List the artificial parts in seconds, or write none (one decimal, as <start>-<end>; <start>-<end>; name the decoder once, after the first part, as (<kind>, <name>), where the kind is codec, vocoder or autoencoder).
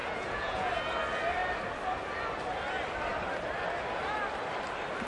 0.0-0.7 (vocoder, Vocos)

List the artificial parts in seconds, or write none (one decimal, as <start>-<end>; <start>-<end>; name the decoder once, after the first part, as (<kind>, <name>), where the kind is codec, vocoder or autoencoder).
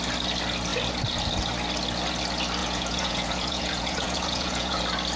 2.6-4.8 (vocoder, Vocos)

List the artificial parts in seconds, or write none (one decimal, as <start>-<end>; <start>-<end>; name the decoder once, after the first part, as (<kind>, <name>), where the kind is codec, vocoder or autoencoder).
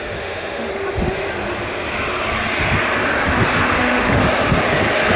0.0-0.7 (autoencoder, DAC-VAE); 3.8-4.2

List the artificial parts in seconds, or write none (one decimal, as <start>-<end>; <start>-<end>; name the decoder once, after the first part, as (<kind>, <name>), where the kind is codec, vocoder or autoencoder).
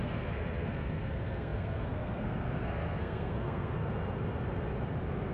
0.0-3.9 (codec, SNAC)